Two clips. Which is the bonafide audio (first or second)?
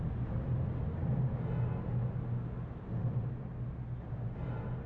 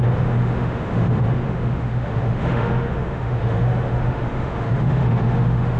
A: first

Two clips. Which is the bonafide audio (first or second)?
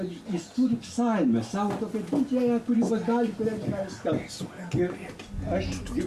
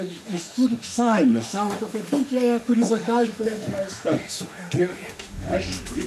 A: first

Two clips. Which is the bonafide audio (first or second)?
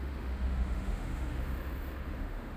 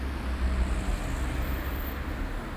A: second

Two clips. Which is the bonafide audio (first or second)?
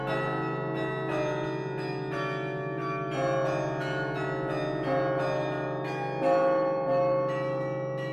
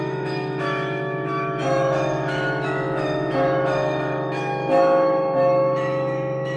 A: first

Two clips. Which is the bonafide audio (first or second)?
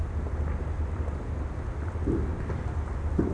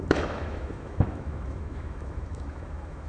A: first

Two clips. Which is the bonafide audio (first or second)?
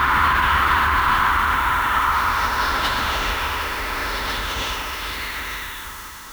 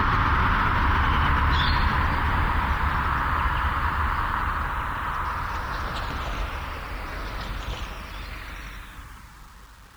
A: second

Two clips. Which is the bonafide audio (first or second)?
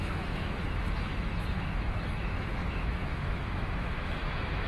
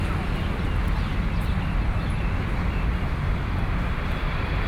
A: second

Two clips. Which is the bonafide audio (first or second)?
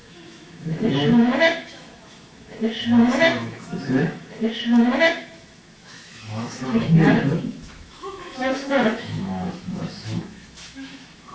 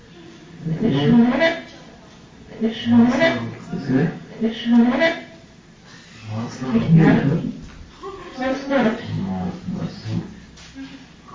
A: second